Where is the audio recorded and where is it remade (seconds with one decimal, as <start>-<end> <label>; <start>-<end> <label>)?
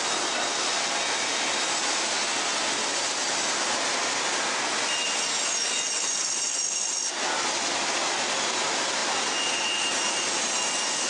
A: 0.0-11.1 recorded